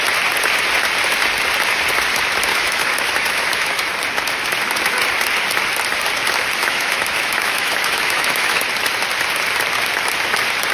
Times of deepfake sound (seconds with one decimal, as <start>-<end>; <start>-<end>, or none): 2.5-3.9; 6.6-8.7